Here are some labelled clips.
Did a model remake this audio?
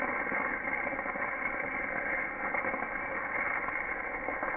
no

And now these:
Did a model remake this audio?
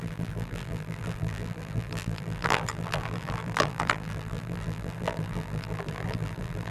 yes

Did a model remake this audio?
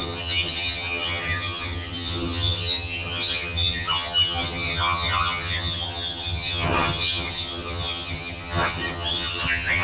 yes